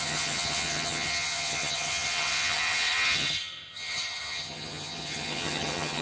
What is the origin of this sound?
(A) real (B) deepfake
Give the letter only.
B